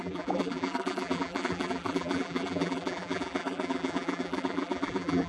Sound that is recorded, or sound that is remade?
remade